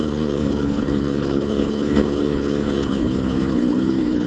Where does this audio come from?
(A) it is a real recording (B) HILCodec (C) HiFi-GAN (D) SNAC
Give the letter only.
B